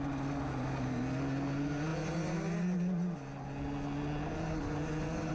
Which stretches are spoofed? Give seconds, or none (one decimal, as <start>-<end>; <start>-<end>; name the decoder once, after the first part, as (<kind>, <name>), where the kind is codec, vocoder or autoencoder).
none

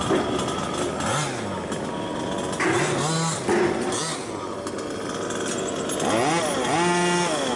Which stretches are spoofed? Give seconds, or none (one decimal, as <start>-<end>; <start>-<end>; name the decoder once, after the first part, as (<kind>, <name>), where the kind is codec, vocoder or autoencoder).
none

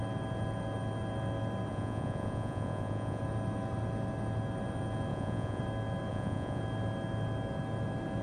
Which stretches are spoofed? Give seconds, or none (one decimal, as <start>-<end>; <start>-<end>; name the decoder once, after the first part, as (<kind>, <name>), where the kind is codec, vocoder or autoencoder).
1.7-3.2 (vocoder, Vocos); 5.1-5.6; 6.1-6.6

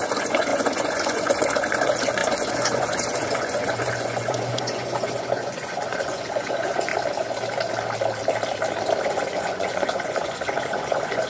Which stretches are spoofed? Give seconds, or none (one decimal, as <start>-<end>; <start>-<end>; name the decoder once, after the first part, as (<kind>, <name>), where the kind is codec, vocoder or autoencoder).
0.0-6.9 (vocoder, Vocos); 9.0-11.3

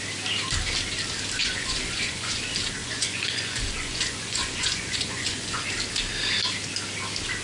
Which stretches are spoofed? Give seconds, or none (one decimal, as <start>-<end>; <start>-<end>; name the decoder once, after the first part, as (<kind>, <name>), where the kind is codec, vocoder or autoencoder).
1.4-2.4 (vocoder, Vocos); 2.8-5.6

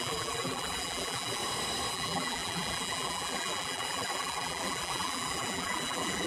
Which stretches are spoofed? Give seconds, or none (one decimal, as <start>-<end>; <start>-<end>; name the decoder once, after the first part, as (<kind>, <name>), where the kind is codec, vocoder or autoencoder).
0.0-1.4 (vocoder, BigVGAN v2); 1.9-6.3

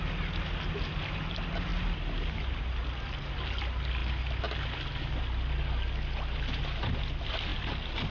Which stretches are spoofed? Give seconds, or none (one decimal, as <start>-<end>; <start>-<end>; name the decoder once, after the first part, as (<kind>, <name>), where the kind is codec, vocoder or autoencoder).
none